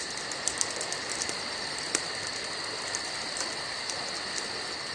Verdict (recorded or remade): recorded